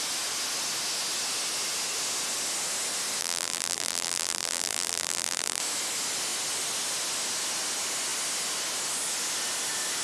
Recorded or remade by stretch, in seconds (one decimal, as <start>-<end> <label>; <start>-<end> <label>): 0.0-3.2 recorded; 3.2-5.6 remade; 5.6-10.0 recorded

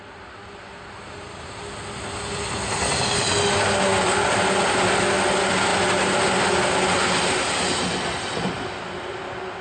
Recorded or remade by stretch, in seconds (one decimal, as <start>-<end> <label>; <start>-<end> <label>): 0.0-9.6 recorded

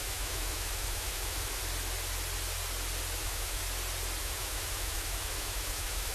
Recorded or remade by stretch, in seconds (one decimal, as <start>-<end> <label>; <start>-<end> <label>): 0.0-1.6 remade; 1.6-3.2 recorded; 3.2-3.6 remade; 3.6-4.2 recorded; 4.2-6.1 remade

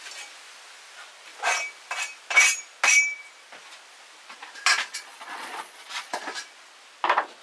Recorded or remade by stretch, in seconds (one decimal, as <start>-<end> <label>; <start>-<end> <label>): 0.0-4.9 recorded; 4.9-6.2 remade; 6.2-7.4 recorded

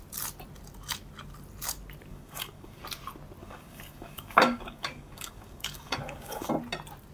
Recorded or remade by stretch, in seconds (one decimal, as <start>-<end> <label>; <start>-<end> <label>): 0.0-2.1 recorded; 2.1-2.8 remade; 2.8-3.4 recorded; 3.4-6.5 remade; 6.5-7.1 recorded

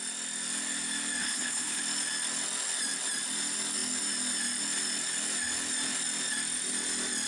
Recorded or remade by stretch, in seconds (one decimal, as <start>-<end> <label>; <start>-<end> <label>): 0.0-1.2 recorded; 1.2-1.8 remade; 1.8-7.3 recorded

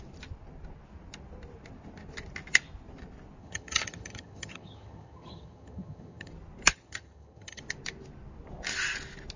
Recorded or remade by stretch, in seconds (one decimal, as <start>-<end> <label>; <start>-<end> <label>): 0.0-3.4 recorded; 3.4-6.3 remade; 6.3-6.7 recorded; 6.7-7.6 remade; 7.6-9.4 recorded